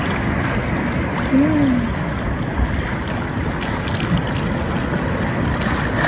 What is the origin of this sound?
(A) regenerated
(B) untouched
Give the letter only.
B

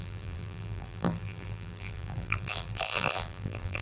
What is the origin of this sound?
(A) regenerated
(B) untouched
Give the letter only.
A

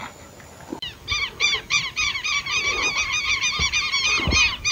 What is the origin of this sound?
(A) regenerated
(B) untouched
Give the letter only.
B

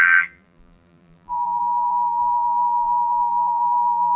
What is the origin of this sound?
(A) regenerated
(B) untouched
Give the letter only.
A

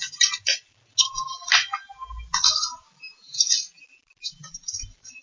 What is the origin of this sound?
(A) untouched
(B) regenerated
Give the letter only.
A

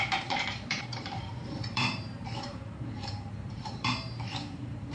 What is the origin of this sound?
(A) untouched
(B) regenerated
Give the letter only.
B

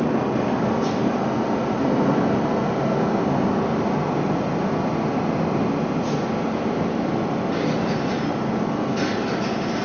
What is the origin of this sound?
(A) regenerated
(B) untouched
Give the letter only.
B